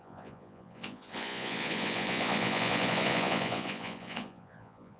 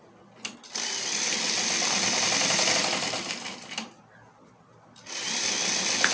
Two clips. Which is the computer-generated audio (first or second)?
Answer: first